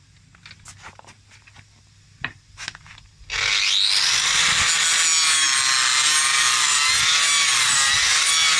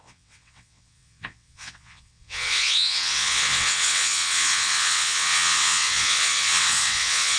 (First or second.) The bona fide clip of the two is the first